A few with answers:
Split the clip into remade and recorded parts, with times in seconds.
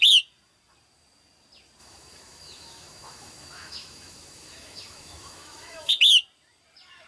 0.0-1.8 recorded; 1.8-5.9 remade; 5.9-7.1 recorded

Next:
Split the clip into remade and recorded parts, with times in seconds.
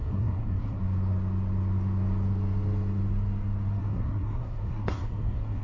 0.0-0.8 remade; 0.8-3.8 recorded; 3.8-5.6 remade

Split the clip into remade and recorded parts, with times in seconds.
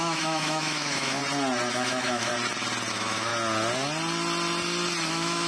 0.0-1.2 remade; 1.2-1.7 recorded; 1.7-2.3 remade; 2.3-2.9 recorded; 2.9-3.3 remade; 3.3-5.1 recorded; 5.1-5.5 remade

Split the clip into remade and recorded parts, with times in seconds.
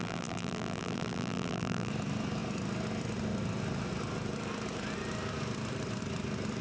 0.0-1.9 remade; 1.9-6.6 recorded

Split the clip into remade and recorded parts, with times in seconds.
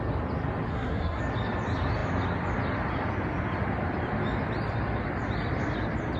0.0-0.7 recorded; 0.7-1.2 remade; 1.2-6.2 recorded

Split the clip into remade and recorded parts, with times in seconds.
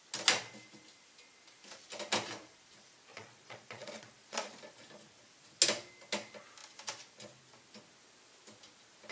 0.0-3.1 recorded; 3.1-4.6 remade; 4.6-9.1 recorded